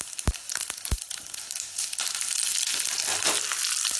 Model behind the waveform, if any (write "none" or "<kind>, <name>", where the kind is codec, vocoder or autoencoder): none